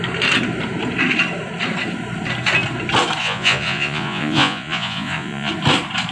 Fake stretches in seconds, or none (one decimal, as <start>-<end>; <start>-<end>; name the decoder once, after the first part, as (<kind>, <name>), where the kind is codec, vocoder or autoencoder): 3.2-5.5 (vocoder, Vocos)